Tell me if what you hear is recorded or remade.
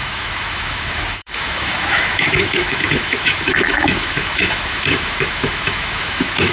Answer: remade